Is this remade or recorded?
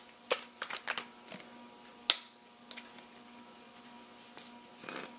recorded